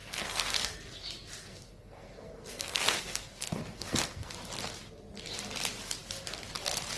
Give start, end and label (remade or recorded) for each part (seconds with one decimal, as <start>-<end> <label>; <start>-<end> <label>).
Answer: 0.0-0.8 remade; 0.8-1.4 recorded; 1.4-4.3 remade; 4.3-7.0 recorded